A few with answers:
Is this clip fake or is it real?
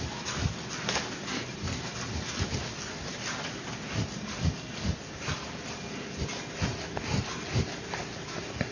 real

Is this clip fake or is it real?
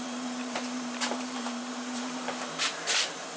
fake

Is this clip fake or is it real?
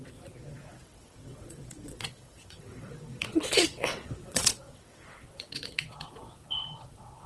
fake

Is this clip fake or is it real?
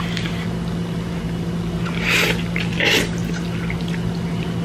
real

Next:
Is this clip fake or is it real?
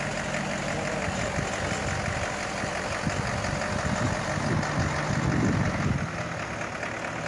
real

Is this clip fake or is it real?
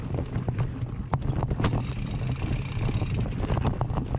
real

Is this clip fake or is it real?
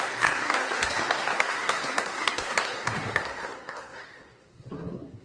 fake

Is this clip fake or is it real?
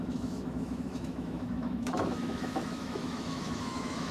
fake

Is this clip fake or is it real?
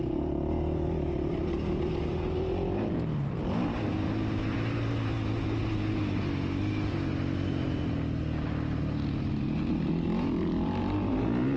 real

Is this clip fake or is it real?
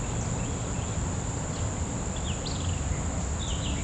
real